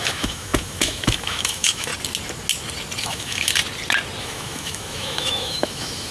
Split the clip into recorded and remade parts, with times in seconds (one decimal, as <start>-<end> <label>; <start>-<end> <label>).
0.0-1.9 remade; 1.9-3.0 recorded; 3.0-3.6 remade; 3.6-4.2 recorded; 4.2-6.1 remade